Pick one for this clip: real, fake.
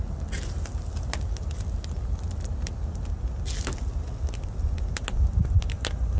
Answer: real